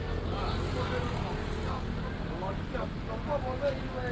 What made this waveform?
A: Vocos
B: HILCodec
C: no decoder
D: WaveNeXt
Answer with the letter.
C